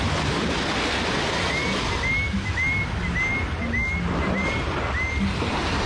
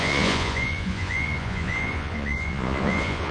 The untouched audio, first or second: first